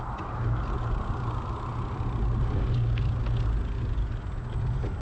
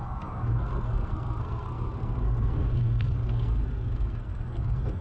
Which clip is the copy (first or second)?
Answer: second